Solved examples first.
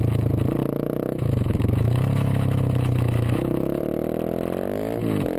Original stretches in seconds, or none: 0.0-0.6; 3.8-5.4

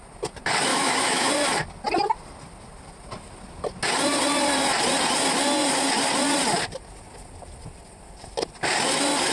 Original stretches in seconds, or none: 0.0-0.7; 1.3-9.3

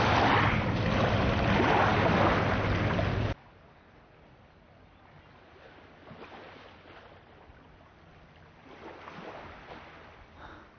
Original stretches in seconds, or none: 0.0-10.8

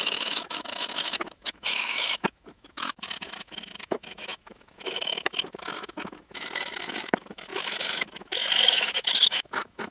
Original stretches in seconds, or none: none

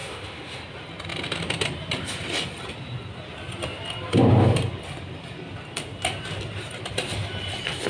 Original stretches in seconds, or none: 0.6-7.9